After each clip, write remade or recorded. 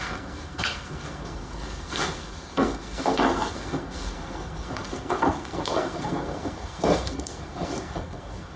remade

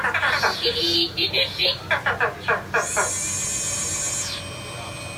recorded